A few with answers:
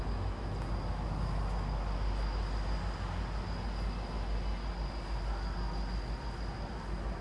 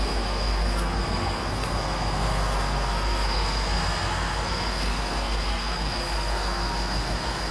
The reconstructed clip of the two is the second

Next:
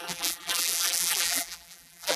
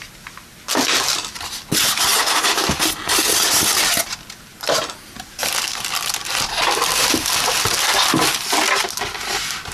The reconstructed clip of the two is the first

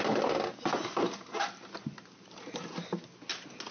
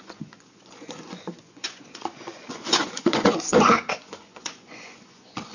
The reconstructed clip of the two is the second